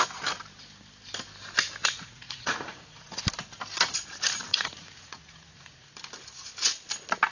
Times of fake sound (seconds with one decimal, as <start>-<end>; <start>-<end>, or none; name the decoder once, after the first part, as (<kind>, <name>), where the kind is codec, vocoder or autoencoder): 1.8-3.2 (vocoder, Vocos); 4.5-5.9